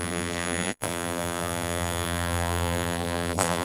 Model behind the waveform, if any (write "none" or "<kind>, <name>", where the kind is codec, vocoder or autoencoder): vocoder, BigVGAN v2